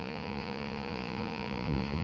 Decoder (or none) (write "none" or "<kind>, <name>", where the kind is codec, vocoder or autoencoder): vocoder, Vocos